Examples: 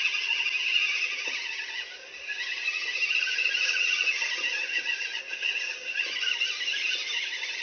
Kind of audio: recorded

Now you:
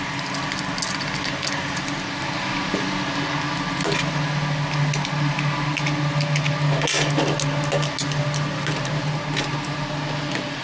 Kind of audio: recorded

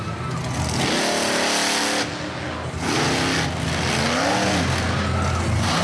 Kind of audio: recorded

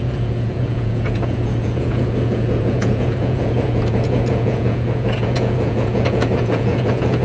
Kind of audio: remade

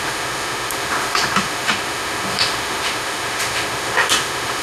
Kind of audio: remade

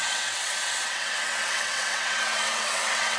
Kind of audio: remade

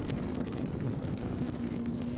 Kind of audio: remade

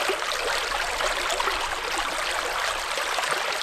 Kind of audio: recorded